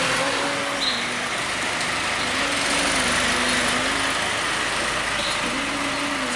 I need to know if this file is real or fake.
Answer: real